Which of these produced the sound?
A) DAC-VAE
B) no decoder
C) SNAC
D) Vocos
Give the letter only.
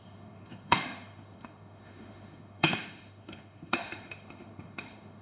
A